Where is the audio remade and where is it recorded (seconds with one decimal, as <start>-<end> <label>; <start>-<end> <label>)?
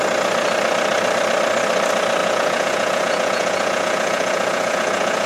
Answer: 0.0-2.2 recorded; 2.2-5.3 remade